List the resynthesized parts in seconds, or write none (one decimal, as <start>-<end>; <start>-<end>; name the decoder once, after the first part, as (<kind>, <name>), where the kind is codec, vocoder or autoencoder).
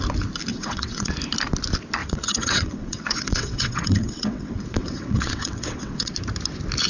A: 0.5-1.1 (vocoder, WaveNeXt); 2.0-6.1